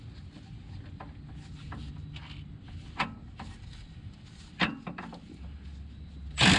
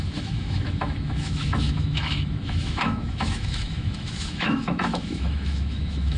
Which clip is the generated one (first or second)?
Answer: second